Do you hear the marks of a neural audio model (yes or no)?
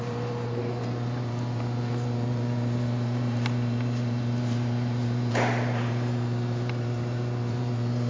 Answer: yes